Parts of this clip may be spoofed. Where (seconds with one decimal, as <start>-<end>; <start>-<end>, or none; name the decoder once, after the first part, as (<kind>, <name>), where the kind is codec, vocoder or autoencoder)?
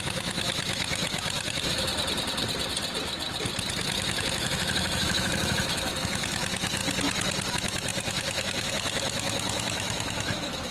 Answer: 0.0-1.9 (autoencoder, DAC-VAE); 3.7-6.8; 7.5-10.7